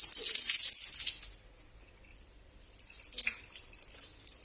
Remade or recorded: recorded